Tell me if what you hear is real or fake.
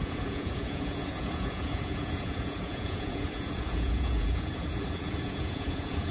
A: fake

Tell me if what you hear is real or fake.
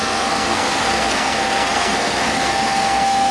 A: fake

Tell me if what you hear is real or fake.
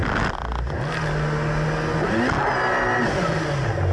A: real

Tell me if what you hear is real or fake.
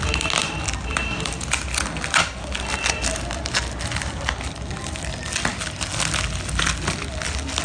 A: real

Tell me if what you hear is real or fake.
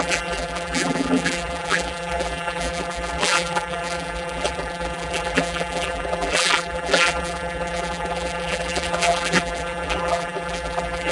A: fake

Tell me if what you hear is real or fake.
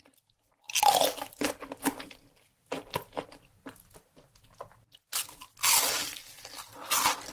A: real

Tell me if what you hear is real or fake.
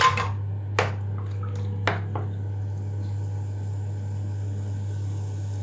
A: real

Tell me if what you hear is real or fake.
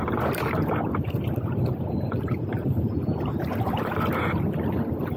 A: fake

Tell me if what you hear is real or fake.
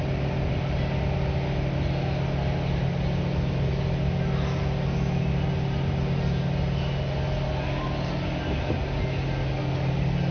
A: real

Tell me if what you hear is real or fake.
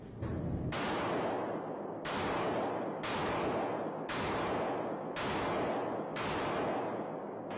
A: real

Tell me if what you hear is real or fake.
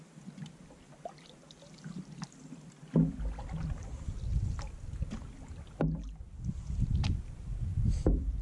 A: real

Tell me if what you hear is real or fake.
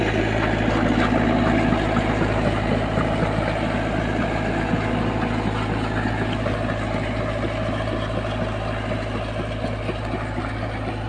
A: real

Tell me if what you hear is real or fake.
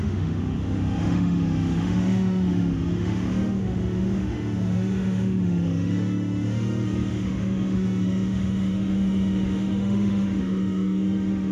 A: fake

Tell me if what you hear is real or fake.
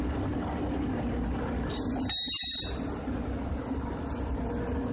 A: real